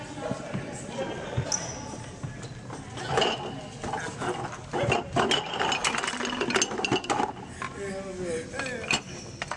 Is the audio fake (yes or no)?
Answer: no